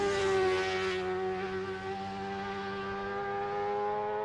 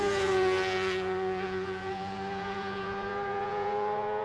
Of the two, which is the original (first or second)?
first